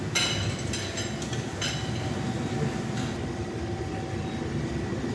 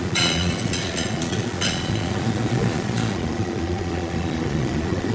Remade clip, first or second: second